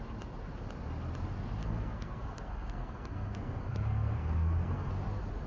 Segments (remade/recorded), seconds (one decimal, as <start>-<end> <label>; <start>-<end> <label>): 0.0-1.6 recorded; 1.6-4.9 remade; 4.9-5.5 recorded